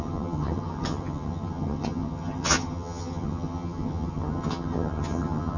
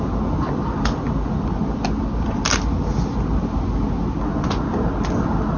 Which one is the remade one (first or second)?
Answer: first